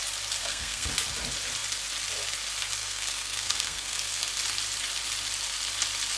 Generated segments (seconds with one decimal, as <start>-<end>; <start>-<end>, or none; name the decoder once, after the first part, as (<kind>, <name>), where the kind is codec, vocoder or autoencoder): 0.4-0.9 (codec, SNAC); 2.8-4.3